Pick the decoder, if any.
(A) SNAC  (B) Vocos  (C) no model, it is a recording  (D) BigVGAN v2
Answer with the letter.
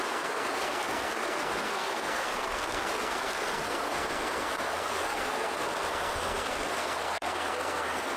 A